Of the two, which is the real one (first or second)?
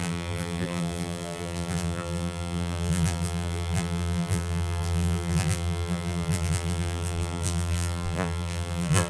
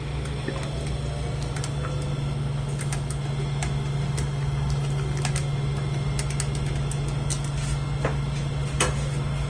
second